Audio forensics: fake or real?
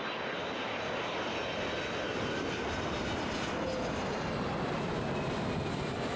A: real